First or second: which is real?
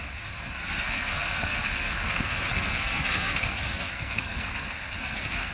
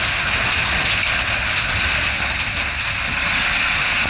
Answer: second